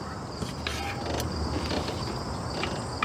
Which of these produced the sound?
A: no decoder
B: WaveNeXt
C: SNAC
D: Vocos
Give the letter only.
A